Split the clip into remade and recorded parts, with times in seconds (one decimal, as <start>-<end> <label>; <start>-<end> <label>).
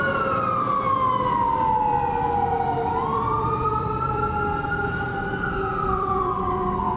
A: 0.0-3.1 recorded; 3.1-4.2 remade; 4.2-5.7 recorded; 5.7-7.0 remade